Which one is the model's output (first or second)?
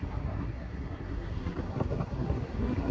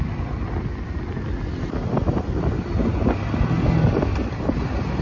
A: first